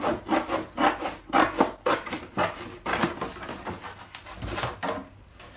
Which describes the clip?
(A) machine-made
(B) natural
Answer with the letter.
B